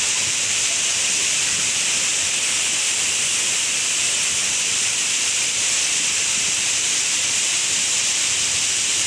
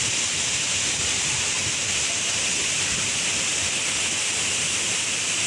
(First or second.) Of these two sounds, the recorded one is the second